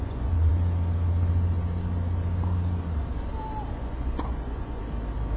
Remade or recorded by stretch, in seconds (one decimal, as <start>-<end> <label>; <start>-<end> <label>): 0.0-0.5 remade; 0.5-3.7 recorded; 3.7-4.8 remade; 4.8-5.4 recorded